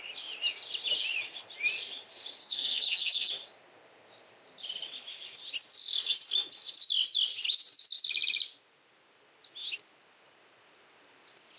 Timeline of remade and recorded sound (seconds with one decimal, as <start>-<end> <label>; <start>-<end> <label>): 0.0-2.4 recorded; 2.4-3.3 remade; 3.3-11.6 recorded